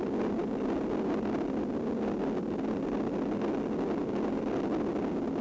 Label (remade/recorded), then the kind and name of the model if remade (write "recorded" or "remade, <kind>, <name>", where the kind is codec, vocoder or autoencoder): recorded